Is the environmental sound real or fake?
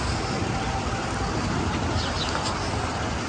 real